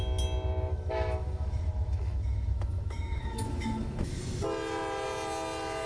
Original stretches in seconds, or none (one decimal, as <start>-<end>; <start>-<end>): 0.0-0.7; 4.2-5.9